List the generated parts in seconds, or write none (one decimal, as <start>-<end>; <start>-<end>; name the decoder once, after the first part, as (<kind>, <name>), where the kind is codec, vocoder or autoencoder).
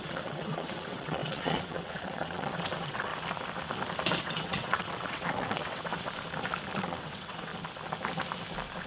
0.0-3.1 (vocoder, WaveNeXt); 4.2-5.9; 6.8-7.5